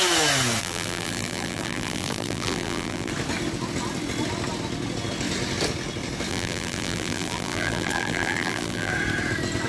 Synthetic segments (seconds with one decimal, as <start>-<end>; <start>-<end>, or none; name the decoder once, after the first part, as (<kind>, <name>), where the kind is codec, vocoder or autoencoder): 0.6-3.1 (vocoder, BigVGAN v2); 6.3-8.9